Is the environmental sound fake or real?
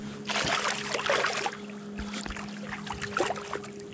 real